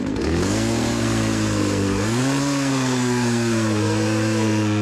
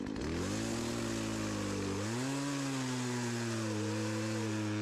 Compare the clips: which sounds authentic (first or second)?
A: second